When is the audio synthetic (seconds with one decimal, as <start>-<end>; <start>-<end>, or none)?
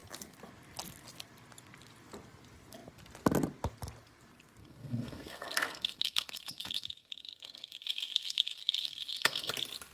4.6-9.5